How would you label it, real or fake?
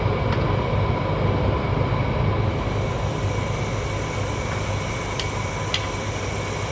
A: real